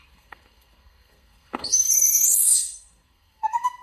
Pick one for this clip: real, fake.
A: fake